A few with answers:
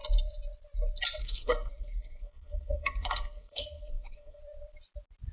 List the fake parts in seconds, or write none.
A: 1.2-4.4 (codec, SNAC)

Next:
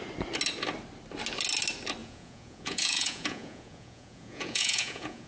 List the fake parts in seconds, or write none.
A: 2.0-5.3 (vocoder, Vocos)

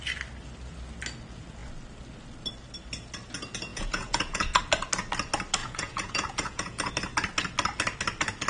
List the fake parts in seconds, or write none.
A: 3.7-4.6 (vocoder, Vocos); 5.6-6.9